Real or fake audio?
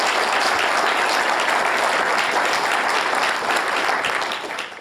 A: real